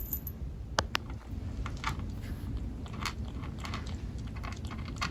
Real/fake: real